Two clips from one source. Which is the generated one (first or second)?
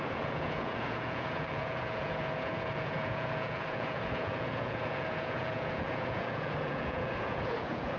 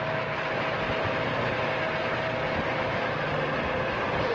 first